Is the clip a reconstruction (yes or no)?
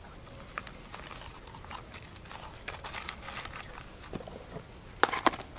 no